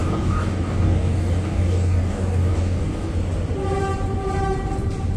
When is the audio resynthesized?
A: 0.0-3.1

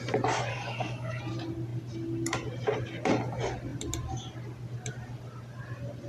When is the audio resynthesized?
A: 0.5-1.2

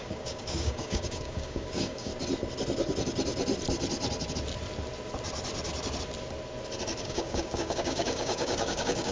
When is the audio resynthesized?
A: 0.0-2.1; 7.0-9.1

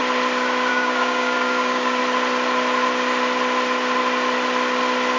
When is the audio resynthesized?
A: 0.7-2.0

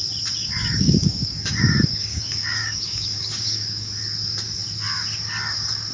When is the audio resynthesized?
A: 0.4-3.9